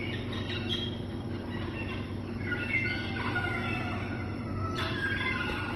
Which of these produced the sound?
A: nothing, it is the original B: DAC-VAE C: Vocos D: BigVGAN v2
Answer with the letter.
A